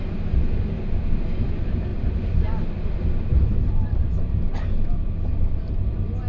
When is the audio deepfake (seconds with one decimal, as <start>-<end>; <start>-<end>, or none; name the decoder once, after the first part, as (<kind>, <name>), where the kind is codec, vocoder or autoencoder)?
none